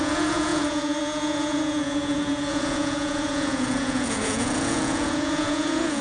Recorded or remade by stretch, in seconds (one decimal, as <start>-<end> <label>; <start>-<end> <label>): 0.0-6.0 remade